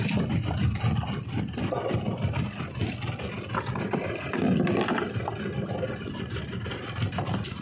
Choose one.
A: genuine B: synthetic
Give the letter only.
A